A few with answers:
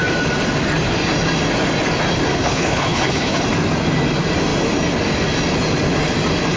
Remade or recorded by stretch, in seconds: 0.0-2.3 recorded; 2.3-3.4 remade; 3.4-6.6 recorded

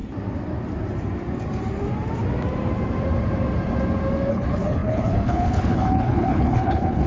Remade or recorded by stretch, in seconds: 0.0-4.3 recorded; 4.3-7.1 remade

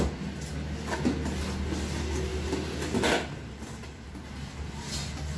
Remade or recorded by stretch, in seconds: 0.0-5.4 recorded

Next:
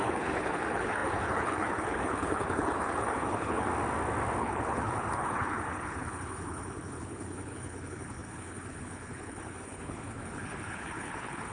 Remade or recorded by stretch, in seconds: 0.0-3.7 remade; 3.7-4.4 recorded; 4.4-11.5 remade

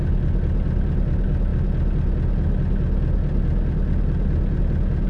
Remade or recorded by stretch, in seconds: 0.0-5.1 recorded